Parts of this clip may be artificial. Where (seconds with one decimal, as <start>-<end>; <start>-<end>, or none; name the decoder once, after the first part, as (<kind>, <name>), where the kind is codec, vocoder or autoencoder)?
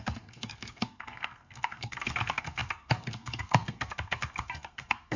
0.0-5.2 (codec, SNAC)